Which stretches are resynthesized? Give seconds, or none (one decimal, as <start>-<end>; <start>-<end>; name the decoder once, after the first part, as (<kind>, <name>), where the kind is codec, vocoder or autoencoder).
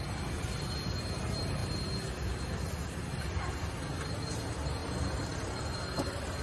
none